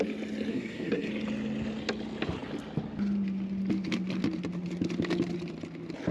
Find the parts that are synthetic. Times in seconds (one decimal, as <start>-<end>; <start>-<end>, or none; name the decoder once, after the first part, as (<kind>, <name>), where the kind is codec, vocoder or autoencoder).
0.5-1.1 (codec, SNAC)